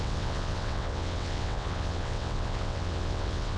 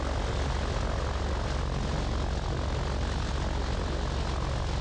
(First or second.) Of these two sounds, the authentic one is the second